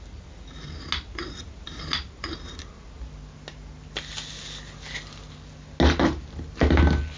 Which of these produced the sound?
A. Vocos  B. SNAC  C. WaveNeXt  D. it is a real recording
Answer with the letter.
D